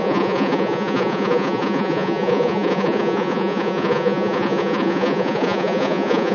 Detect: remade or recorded remade